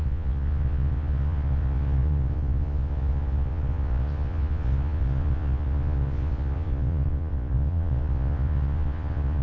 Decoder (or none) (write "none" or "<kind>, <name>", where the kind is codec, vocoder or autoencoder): vocoder, Vocos